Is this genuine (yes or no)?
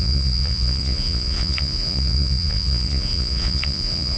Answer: no